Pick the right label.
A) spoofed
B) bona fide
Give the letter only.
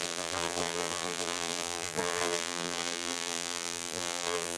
A